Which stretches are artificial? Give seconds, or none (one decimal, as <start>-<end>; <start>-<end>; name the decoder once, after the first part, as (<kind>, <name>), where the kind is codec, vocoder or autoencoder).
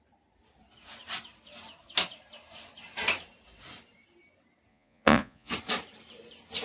4.7-5.5 (vocoder, Vocos)